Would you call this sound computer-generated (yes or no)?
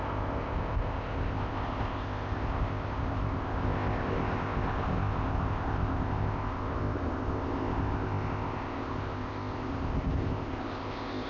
yes